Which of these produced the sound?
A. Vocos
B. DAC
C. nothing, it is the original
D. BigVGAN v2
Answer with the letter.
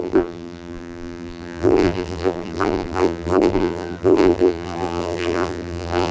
D